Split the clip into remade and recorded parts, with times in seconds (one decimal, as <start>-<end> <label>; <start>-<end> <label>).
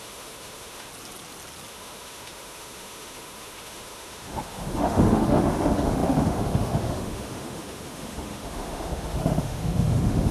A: 0.0-0.9 remade; 0.9-1.7 recorded; 1.7-10.3 remade